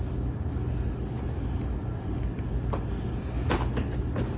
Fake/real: real